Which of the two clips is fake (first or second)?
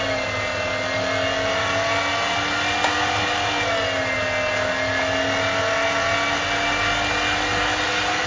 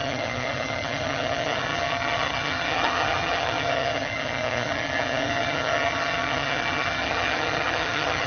second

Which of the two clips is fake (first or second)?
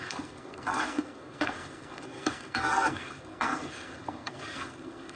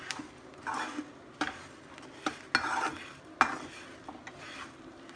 first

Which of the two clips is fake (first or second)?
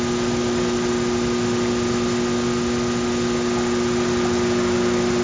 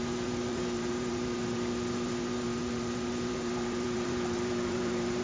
second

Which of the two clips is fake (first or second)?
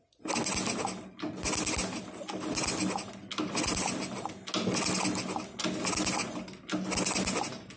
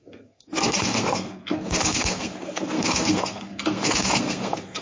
second